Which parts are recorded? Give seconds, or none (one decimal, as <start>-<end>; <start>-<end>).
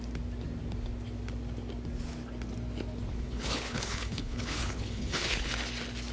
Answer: 0.0-3.1; 5.5-6.1